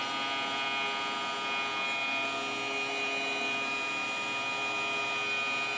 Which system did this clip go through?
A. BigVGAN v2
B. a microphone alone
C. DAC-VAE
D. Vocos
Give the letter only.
B